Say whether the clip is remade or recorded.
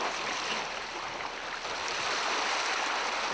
recorded